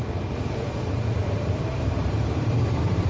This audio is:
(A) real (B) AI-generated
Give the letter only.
B